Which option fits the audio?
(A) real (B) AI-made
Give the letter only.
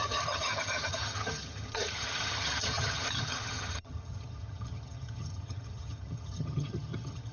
B